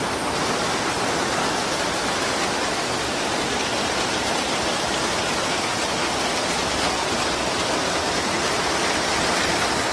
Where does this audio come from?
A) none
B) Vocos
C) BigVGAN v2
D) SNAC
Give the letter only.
A